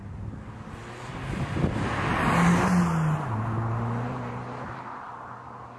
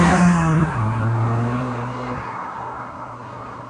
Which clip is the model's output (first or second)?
second